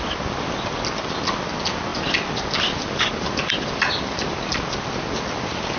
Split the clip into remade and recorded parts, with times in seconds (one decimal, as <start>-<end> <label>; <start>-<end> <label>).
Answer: 0.0-5.8 recorded